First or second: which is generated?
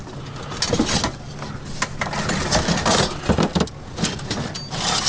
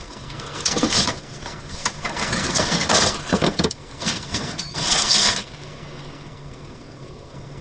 second